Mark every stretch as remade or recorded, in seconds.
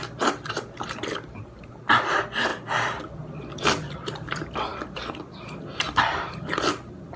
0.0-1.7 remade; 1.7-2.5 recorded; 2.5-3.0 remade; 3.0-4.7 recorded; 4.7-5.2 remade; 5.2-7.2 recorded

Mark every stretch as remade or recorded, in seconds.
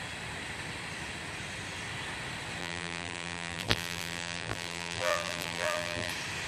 0.0-2.6 recorded; 2.6-6.1 remade; 6.1-6.5 recorded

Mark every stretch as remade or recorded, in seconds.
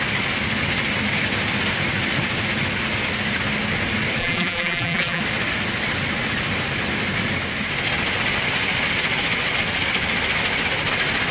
0.0-4.2 recorded; 4.2-5.2 remade; 5.2-11.3 recorded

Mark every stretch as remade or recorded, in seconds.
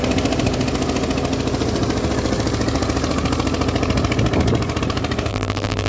0.0-5.3 recorded; 5.3-5.9 remade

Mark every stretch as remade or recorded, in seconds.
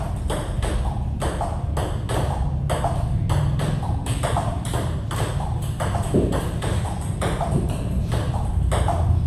0.0-4.0 recorded; 4.0-8.5 remade; 8.5-9.3 recorded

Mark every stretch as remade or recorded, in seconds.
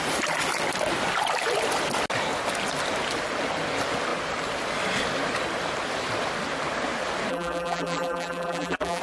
0.0-7.3 recorded; 7.3-9.0 remade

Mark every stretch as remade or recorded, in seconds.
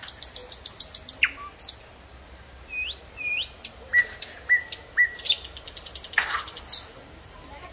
0.0-0.4 remade; 0.4-3.1 recorded; 3.1-4.0 remade; 4.0-4.6 recorded; 4.6-7.7 remade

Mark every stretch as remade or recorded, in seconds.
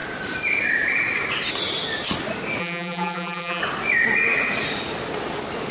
0.0-2.6 recorded; 2.6-3.6 remade; 3.6-5.7 recorded